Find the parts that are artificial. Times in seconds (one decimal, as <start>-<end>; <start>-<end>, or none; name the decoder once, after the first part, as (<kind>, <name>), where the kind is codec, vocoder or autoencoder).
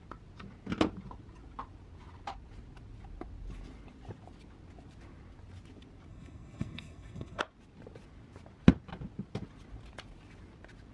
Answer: 6.1-7.4 (codec, SNAC)